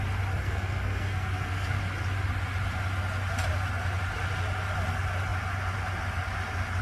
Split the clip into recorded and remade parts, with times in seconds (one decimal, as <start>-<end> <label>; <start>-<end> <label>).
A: 0.0-0.4 recorded; 0.4-1.8 remade; 1.8-6.8 recorded